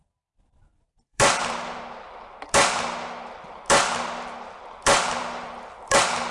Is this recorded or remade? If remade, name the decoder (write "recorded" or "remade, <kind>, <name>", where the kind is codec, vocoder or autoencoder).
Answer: remade, vocoder, BigVGAN v2